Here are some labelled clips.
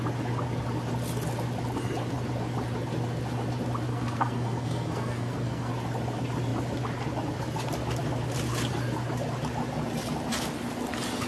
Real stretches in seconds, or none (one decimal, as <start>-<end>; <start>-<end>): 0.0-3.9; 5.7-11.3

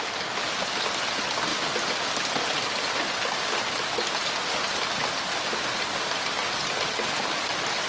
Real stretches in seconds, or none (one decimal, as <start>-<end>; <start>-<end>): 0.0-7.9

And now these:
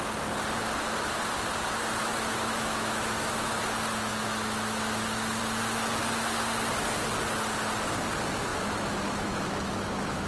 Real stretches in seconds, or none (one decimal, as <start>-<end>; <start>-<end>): 0.0-2.0; 3.6-4.1; 5.4-8.5

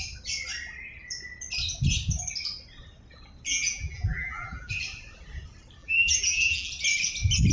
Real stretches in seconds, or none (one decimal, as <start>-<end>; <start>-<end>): 0.0-3.5; 4.7-5.8; 6.7-7.5

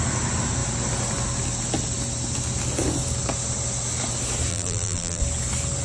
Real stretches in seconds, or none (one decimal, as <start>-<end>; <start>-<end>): 0.0-4.5; 5.2-5.8

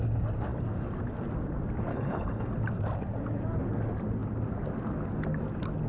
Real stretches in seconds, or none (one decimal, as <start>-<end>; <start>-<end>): 0.0-1.9; 2.5-5.9